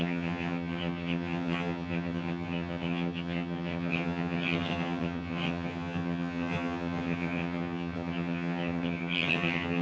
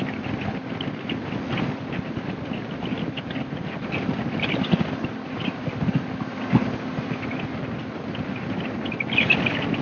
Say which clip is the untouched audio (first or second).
second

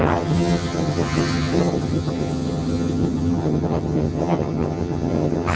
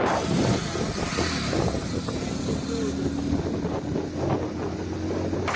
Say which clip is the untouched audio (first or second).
second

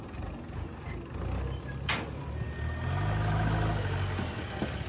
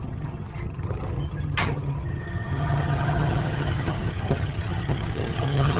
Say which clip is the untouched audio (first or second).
first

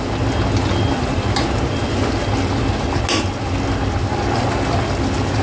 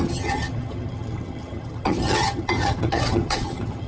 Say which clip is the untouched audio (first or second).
first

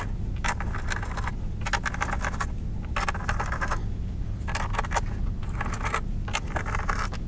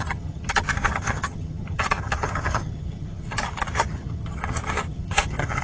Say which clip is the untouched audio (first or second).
first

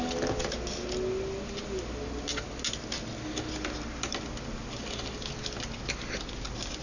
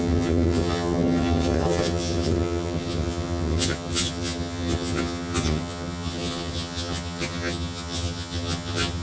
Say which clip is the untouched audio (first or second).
first